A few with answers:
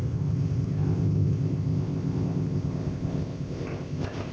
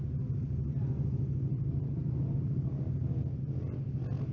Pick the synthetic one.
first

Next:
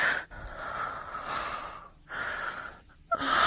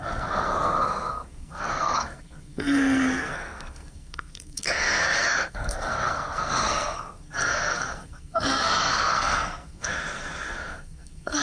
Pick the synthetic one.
second